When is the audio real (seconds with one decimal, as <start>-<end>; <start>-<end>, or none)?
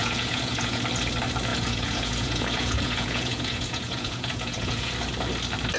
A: 0.8-1.5; 5.0-5.8